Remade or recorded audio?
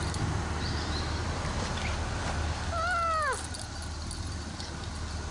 recorded